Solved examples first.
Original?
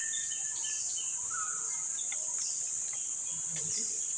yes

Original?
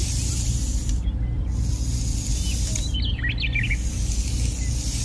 yes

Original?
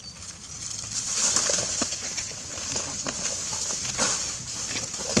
yes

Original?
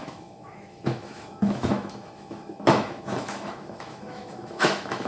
no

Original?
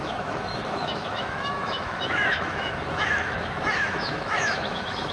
no